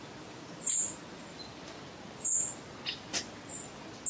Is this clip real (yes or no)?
yes